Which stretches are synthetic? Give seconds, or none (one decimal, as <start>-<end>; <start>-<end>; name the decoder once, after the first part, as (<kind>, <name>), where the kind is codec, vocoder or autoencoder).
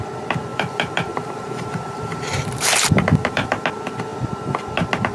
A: 0.5-3.6 (vocoder, BigVGAN v2)